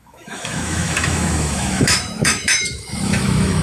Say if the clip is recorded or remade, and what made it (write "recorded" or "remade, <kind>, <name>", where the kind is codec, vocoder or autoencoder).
remade, autoencoder, DAC-VAE